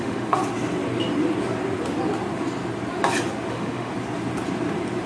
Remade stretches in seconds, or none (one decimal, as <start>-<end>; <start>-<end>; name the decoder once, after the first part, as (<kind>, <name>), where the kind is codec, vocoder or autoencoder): 0.0-0.4 (autoencoder, DAC-VAE); 3.5-3.9